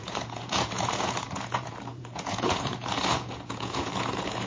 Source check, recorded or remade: remade